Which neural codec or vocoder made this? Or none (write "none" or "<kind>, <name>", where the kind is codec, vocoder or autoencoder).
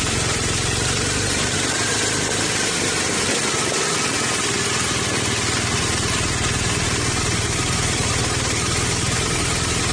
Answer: none